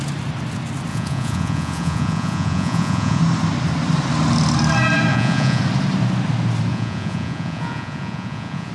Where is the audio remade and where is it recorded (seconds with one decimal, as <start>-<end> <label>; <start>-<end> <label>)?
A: 0.0-0.9 recorded; 0.9-3.2 remade; 3.2-5.1 recorded; 5.1-5.6 remade; 5.6-6.7 recorded; 6.7-8.7 remade